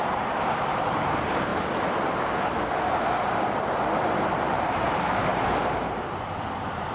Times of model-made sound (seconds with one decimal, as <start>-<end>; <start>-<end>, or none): 0.0-1.5; 4.6-6.9